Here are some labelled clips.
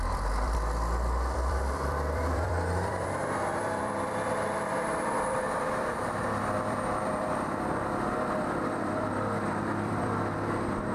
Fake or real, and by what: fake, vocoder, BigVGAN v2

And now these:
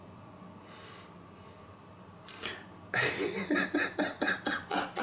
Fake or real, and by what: real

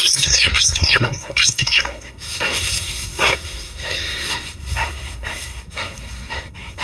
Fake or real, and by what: fake, codec, SNAC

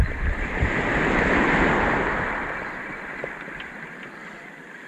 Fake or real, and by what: real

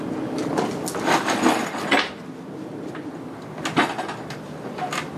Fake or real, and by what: real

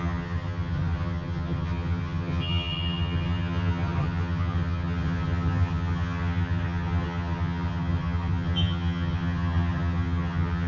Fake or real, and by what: fake, vocoder, HiFi-GAN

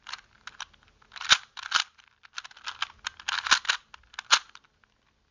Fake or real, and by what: real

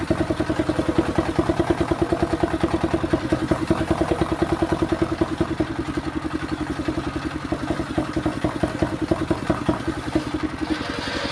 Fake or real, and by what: real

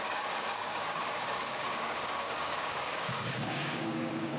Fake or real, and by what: fake, codec, DAC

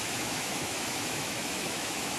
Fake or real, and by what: fake, autoencoder, DAC-VAE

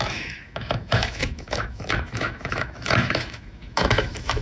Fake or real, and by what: fake, autoencoder, DAC-VAE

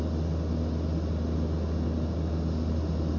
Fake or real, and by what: real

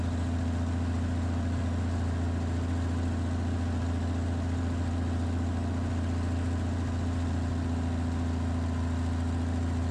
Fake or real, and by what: real